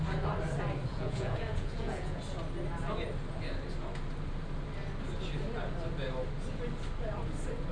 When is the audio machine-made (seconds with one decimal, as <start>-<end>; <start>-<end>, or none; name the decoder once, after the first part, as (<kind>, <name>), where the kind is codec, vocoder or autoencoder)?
0.9-2.2 (vocoder, Vocos)